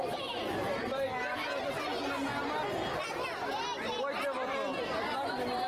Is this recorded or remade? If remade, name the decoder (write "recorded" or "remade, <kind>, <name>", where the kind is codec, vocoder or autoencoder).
recorded